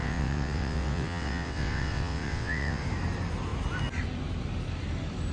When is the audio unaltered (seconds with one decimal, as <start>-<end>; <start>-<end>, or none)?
2.8-5.3